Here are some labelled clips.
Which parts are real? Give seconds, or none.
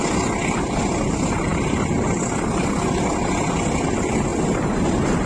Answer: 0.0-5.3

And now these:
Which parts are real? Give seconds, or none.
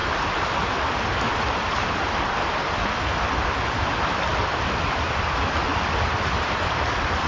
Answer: 0.0-7.3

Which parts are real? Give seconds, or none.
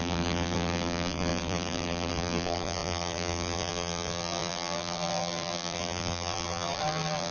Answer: none